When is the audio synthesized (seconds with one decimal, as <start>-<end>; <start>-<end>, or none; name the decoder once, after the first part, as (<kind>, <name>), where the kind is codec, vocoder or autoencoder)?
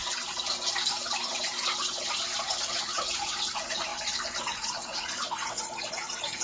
2.7-3.9 (vocoder, Vocos); 4.4-6.4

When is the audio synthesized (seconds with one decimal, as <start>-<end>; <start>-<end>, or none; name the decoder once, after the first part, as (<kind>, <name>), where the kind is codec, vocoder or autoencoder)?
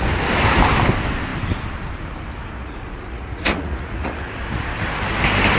2.6-4.4 (vocoder, Vocos)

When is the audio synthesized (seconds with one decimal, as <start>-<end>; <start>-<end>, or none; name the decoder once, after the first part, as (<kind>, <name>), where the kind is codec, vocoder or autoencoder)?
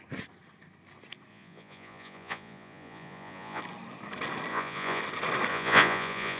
1.3-3.6 (vocoder, Vocos); 4.5-5.0; 5.5-6.4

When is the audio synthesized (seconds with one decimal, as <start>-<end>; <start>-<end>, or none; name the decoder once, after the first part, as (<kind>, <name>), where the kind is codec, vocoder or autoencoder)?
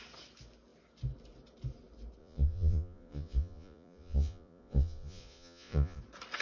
2.2-6.0 (vocoder, Vocos)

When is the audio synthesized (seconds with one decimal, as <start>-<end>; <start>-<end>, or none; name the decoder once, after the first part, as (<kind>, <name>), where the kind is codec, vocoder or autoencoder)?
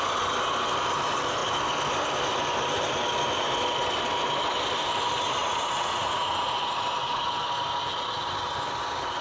5.4-7.3 (vocoder, Vocos)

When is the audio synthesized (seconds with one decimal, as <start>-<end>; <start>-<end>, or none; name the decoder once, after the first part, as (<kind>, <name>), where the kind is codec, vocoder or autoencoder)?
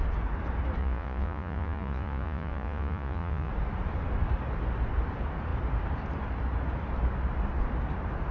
0.8-3.5 (vocoder, Vocos)